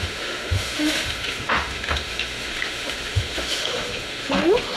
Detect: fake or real fake